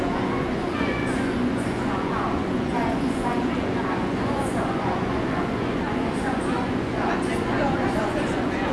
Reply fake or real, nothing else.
fake